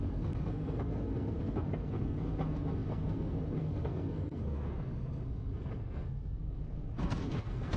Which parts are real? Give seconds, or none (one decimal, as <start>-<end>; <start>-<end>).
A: none